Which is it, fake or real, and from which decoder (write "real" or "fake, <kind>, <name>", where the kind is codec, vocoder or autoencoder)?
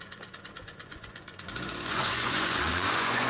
fake, vocoder, Vocos